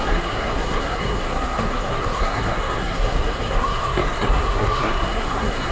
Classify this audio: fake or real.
fake